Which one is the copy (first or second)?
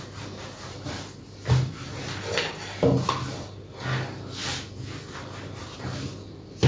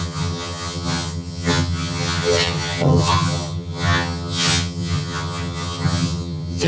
second